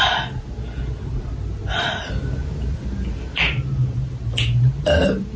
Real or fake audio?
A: real